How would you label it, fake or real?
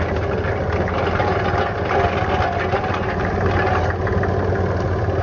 real